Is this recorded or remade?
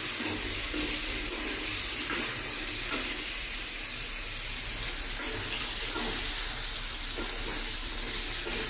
recorded